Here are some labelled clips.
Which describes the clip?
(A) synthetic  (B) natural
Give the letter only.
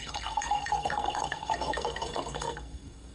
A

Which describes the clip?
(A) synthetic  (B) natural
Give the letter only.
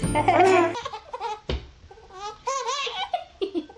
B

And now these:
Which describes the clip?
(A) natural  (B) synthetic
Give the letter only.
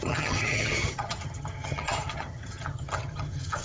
B